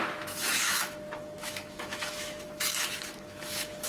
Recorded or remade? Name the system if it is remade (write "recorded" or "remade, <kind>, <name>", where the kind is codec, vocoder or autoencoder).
remade, autoencoder, DAC-VAE